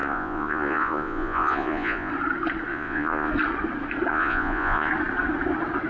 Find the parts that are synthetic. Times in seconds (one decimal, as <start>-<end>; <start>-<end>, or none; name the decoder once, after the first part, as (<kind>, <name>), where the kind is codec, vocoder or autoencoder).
0.0-2.1 (vocoder, Vocos); 2.7-3.3; 4.1-4.9